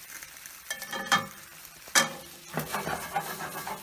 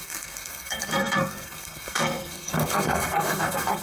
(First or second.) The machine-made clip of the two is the second